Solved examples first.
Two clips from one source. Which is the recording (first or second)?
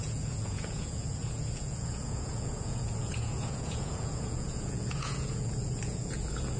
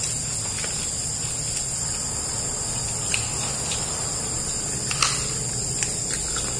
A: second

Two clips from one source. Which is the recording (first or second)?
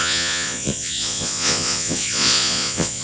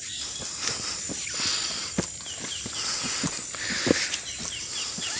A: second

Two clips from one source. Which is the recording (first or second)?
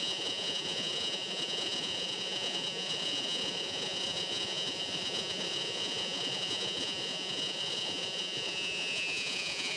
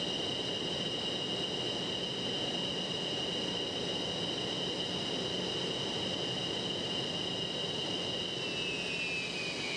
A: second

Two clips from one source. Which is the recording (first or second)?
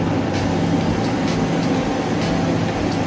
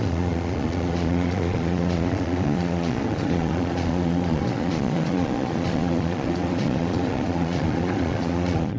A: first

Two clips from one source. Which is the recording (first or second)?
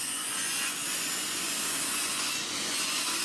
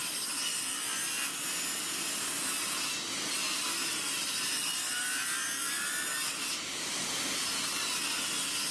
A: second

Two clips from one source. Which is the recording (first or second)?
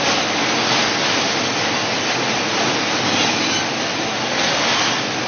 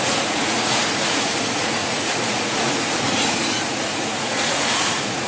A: first